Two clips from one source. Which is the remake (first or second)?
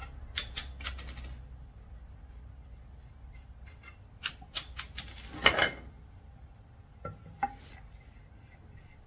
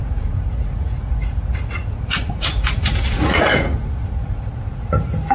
second